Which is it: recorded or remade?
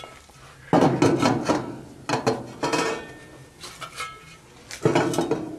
recorded